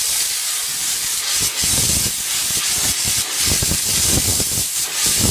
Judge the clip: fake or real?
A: real